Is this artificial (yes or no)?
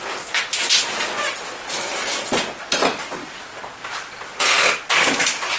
no